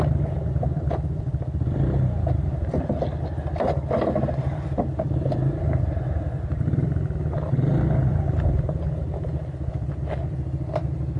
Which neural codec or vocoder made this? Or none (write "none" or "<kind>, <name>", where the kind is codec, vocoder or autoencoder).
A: none